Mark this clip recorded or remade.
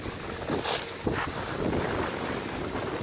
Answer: recorded